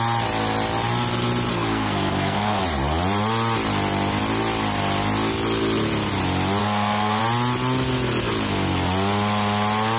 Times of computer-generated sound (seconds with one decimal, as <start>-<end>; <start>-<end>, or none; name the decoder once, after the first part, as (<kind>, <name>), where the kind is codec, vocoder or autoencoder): 1.5-2.6 (codec, SNAC); 6.6-7.2